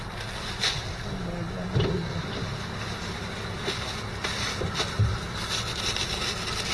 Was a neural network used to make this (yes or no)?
no